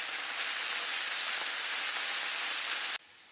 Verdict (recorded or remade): recorded